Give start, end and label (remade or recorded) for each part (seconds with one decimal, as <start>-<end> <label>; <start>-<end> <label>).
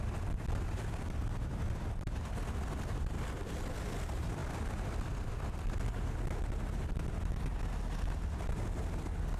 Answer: 0.0-9.4 recorded